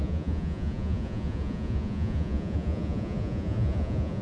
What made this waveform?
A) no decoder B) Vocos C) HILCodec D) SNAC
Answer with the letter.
B